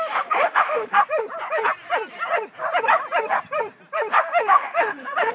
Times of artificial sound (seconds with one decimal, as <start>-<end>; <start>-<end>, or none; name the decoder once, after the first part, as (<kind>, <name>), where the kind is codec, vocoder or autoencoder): 0.0-1.0 (autoencoder, DAC-VAE); 4.2-5.3